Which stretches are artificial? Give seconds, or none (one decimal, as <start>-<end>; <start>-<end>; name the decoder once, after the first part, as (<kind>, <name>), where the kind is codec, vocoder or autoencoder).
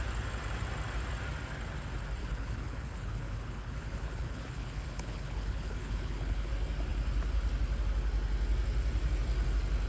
2.2-6.5 (codec, HILCodec)